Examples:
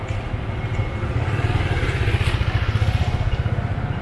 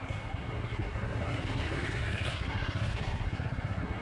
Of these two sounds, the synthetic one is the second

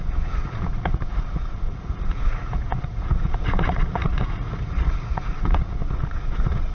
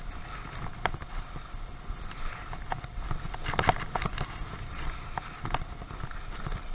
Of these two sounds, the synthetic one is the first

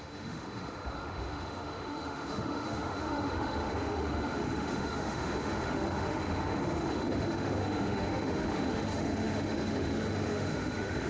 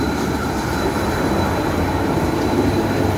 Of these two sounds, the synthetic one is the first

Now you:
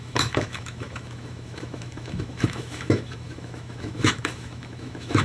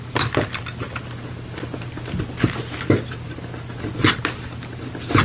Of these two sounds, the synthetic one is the first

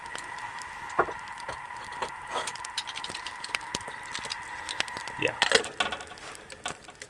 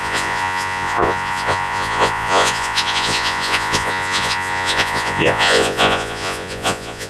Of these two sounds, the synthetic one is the second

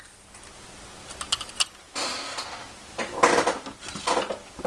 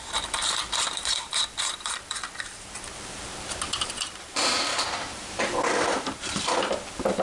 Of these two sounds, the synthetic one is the second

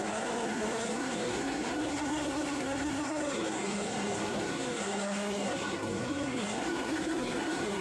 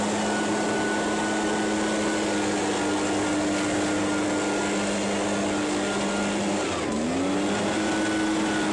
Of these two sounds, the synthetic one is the first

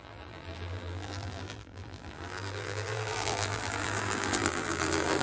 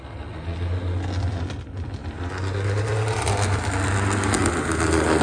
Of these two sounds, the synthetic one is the first